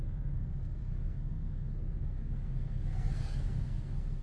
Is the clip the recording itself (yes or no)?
no